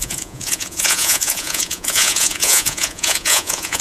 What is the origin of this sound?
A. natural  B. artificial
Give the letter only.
B